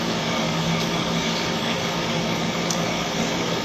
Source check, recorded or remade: remade